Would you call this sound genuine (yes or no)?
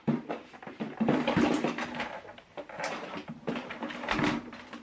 no